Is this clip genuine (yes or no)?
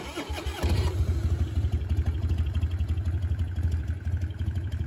yes